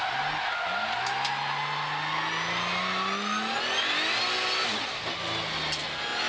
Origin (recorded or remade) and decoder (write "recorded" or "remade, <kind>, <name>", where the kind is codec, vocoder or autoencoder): recorded